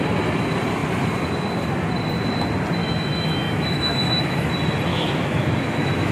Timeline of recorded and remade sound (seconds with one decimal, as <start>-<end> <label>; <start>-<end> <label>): 0.0-2.8 recorded; 2.8-4.5 remade; 4.5-4.9 recorded; 4.9-6.1 remade